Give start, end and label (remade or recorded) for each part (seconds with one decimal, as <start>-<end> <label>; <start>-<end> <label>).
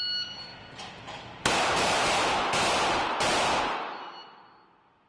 0.0-5.1 recorded